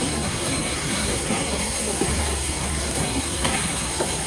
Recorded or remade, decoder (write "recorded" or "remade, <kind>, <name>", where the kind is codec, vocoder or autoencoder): remade, codec, SNAC